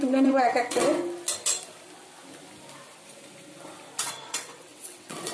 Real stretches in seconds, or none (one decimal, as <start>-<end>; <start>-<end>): 0.8-4.0